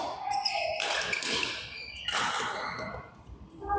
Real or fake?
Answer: real